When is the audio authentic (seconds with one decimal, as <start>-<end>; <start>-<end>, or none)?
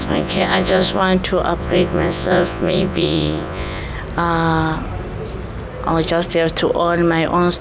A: 1.0-1.6; 3.8-7.6